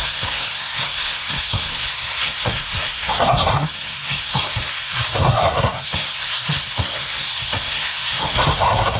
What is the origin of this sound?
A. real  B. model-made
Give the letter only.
B